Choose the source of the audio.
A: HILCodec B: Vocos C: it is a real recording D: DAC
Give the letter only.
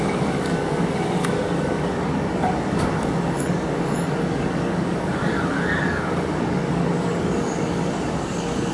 D